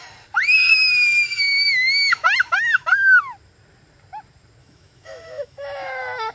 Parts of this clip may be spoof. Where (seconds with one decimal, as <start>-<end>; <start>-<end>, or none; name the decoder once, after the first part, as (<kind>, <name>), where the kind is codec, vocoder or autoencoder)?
0.7-3.2 (autoencoder, DAC-VAE); 4.6-6.3